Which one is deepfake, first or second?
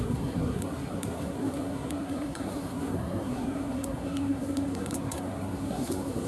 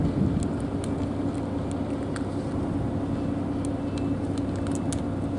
first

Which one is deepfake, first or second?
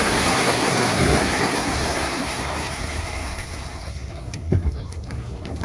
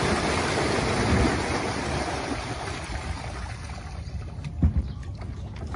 first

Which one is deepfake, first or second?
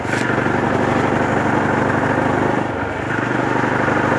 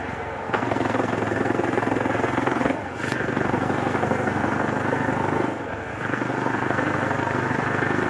second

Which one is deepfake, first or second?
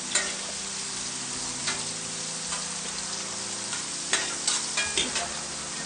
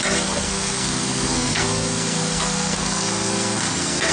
second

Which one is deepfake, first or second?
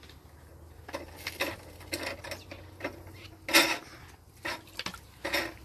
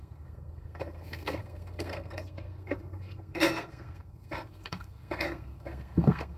second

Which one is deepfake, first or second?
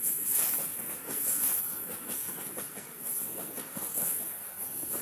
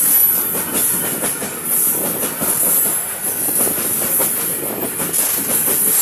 first